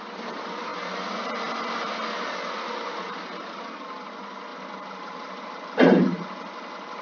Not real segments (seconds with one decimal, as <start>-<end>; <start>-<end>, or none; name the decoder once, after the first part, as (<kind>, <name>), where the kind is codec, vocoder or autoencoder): none